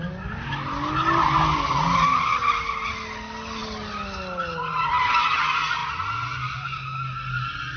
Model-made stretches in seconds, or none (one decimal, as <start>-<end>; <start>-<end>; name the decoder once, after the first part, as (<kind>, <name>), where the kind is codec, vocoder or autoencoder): none

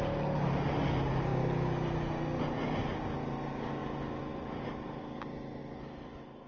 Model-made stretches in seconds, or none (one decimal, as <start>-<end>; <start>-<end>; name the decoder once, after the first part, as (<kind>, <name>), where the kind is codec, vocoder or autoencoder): none

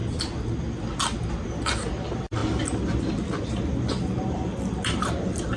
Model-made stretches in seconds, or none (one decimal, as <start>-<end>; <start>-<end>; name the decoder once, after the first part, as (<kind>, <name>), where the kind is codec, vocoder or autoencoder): none

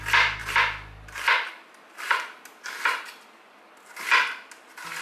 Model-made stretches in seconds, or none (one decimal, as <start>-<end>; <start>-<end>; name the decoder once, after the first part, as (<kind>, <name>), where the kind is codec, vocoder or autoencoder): none